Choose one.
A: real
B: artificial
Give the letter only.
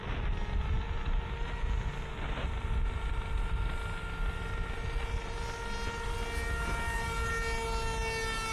A